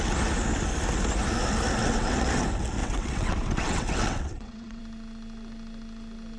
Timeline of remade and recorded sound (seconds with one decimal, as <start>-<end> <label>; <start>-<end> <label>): 0.0-1.8 recorded; 1.8-2.4 remade; 2.4-2.8 recorded; 2.8-4.8 remade; 4.8-6.4 recorded